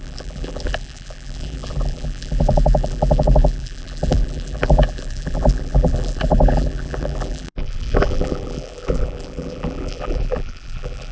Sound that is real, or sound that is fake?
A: fake